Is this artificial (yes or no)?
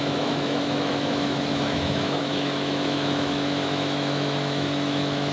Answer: yes